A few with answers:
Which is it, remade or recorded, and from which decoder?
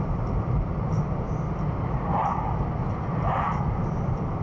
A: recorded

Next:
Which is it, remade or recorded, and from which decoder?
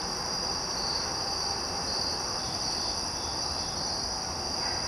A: recorded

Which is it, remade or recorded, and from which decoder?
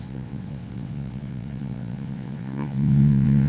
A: remade, vocoder, WaveNeXt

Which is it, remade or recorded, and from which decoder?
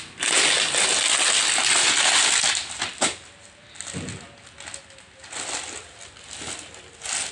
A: recorded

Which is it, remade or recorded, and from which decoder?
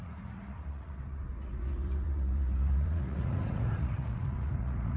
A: remade, vocoder, Vocos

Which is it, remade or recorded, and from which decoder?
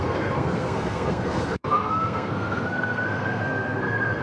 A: remade, codec, SNAC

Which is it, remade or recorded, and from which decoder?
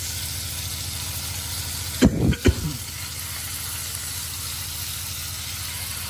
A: recorded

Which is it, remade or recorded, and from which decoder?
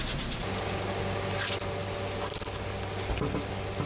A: recorded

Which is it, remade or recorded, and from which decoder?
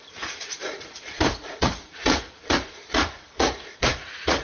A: remade, vocoder, Vocos